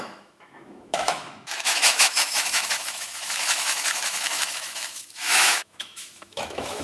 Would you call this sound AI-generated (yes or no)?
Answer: yes